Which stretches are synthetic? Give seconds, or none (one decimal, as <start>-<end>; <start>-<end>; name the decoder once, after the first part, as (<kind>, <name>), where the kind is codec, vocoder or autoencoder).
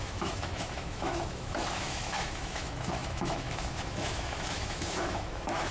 0.0-5.7 (autoencoder, DAC-VAE)